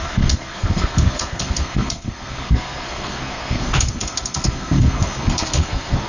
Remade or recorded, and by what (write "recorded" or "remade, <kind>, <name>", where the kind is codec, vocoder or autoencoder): remade, codec, SNAC